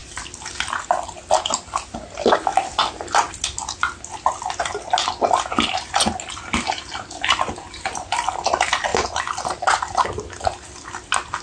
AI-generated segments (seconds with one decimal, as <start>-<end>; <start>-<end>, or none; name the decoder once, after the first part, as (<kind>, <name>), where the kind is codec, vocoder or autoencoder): none